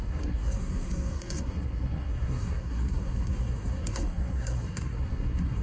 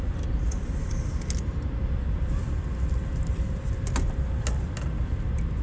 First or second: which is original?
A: second